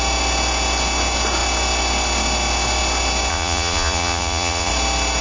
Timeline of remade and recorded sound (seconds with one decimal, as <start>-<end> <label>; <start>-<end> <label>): 0.0-3.3 recorded; 3.3-4.7 remade; 4.7-5.2 recorded